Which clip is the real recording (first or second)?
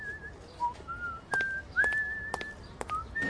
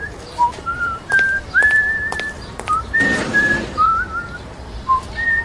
first